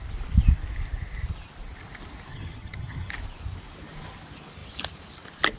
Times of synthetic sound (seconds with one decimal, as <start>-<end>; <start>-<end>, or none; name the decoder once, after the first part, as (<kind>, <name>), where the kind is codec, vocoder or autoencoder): 2.3-3.1 (vocoder, HiFi-GAN)